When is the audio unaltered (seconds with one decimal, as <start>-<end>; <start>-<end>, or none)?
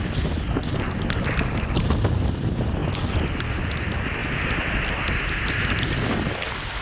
0.0-6.8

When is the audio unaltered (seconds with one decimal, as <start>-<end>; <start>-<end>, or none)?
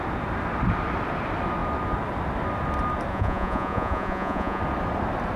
0.0-3.1; 4.6-5.4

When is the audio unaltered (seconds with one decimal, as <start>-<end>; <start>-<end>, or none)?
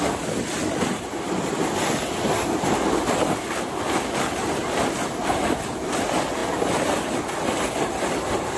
0.0-8.6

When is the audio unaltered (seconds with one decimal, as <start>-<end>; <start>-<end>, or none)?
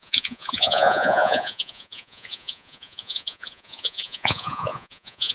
none